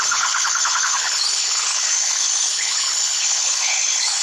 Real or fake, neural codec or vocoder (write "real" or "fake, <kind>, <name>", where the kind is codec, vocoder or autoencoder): fake, codec, HILCodec